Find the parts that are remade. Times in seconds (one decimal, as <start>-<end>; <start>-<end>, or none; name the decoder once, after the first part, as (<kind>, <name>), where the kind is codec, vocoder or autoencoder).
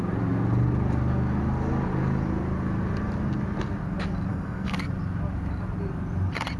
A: 4.3-4.9 (codec, SNAC)